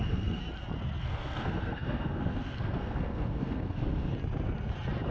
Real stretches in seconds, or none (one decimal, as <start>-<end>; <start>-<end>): 0.4-1.0; 4.1-5.1